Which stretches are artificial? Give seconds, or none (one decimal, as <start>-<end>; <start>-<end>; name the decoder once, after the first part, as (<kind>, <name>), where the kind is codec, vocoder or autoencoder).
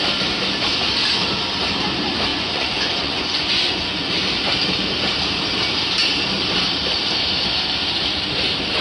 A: 2.3-4.1 (vocoder, Vocos)